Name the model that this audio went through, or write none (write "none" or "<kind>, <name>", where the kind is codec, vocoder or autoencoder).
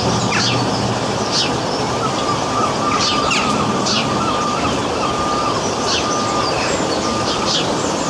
vocoder, BigVGAN v2